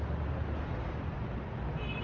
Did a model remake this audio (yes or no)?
no